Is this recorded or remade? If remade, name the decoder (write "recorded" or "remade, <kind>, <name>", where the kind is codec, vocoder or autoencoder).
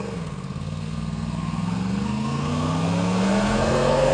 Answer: remade, codec, SNAC